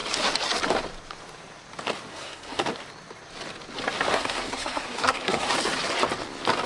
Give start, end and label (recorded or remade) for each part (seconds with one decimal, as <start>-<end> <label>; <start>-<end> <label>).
0.0-2.1 recorded; 2.1-2.6 remade; 2.6-4.1 recorded; 4.1-5.5 remade; 5.5-6.7 recorded

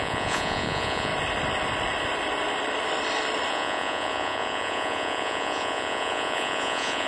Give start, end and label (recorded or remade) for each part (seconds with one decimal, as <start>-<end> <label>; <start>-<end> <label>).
0.0-1.1 remade; 1.1-3.5 recorded; 3.5-7.1 remade

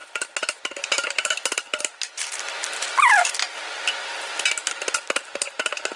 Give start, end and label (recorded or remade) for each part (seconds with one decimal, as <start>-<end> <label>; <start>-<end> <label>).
0.0-6.0 recorded

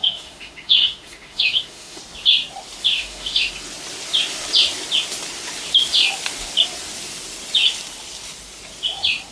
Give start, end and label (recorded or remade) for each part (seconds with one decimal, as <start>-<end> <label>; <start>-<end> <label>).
0.0-2.0 remade; 2.0-2.9 recorded; 2.9-3.5 remade; 3.5-9.3 recorded

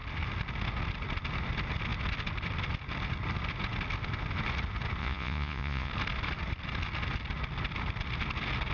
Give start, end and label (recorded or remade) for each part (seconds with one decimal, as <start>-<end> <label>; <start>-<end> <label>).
0.0-5.0 recorded; 5.0-5.9 remade; 5.9-8.7 recorded